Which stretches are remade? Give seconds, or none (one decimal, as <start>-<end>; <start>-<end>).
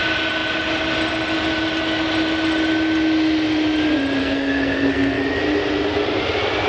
4.2-5.2